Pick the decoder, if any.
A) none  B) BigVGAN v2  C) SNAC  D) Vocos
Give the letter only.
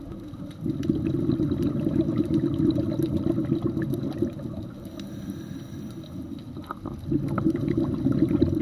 A